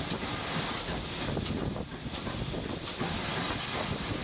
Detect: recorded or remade recorded